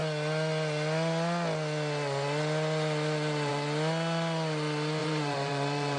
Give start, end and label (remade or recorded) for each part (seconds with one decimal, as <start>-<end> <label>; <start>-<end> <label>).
0.0-5.0 recorded; 5.0-6.0 remade